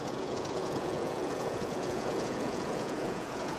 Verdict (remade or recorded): remade